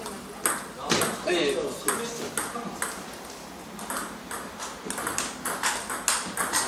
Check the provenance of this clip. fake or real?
real